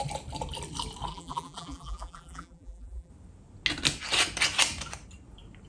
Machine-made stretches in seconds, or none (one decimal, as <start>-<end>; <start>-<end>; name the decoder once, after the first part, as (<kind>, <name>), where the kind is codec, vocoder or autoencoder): 1.1-3.1 (vocoder, BigVGAN v2)